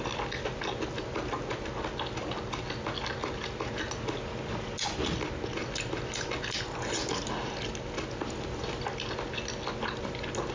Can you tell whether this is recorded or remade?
recorded